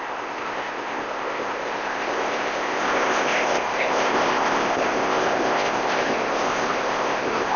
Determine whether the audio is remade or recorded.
remade